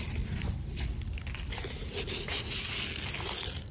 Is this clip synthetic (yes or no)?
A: no